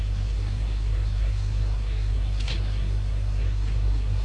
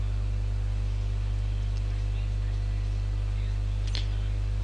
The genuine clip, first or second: second